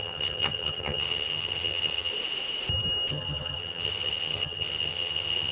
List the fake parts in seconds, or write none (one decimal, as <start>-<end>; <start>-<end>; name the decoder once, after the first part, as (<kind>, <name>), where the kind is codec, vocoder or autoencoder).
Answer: 0.0-2.1 (vocoder, HiFi-GAN); 3.1-5.5